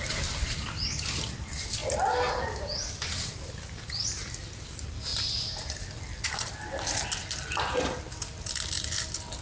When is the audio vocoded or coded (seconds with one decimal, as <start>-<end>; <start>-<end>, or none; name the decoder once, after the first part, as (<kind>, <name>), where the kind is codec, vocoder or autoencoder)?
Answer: none